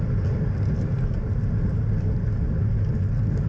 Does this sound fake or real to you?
real